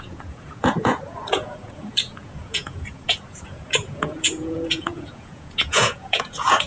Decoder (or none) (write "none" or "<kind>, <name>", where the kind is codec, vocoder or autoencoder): vocoder, Vocos